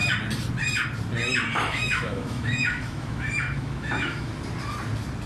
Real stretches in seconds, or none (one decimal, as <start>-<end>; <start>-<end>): 0.0-1.5; 4.3-5.3